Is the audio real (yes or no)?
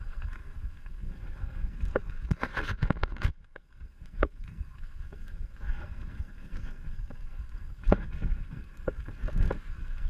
no